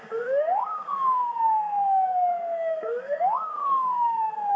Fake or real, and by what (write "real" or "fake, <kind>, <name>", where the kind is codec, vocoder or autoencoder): fake, codec, SNAC